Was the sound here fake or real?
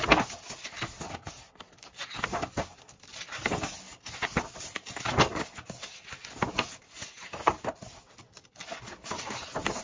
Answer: real